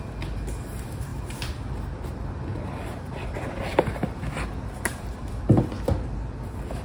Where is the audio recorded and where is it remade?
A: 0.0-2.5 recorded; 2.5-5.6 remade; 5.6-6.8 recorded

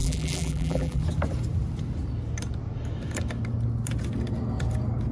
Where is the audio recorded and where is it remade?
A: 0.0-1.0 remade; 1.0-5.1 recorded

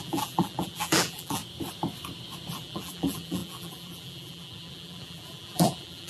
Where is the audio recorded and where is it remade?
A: 0.0-1.4 remade; 1.4-2.5 recorded; 2.5-6.1 remade

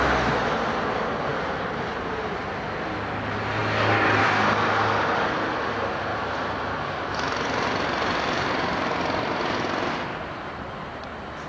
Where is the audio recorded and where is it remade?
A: 0.0-1.3 recorded; 1.3-2.3 remade; 2.3-6.1 recorded; 6.1-9.0 remade; 9.0-10.1 recorded; 10.1-11.0 remade; 11.0-11.5 recorded

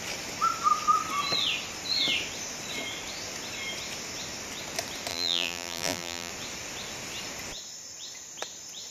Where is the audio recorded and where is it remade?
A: 0.0-5.1 recorded; 5.1-6.3 remade; 6.3-8.9 recorded

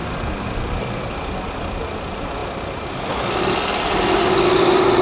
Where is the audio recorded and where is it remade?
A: 0.0-1.1 remade; 1.1-5.0 recorded